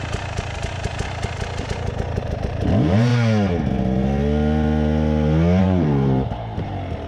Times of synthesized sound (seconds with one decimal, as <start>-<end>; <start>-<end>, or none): 0.0-0.9; 2.2-3.1; 5.6-7.1